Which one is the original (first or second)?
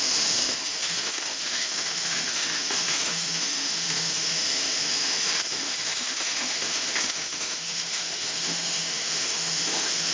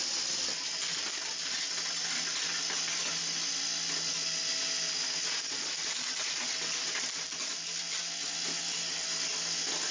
second